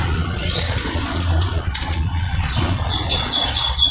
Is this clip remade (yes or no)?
yes